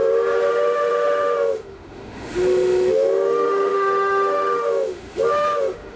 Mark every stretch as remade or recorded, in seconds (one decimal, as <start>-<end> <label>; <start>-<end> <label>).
0.0-0.5 recorded; 0.5-6.0 remade